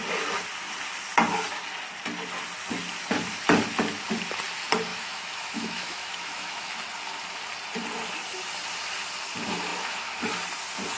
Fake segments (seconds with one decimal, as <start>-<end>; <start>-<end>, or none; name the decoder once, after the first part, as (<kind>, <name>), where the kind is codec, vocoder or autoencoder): 4.9-6.7 (autoencoder, DAC-VAE); 9.7-10.2